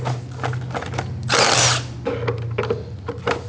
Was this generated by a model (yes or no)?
no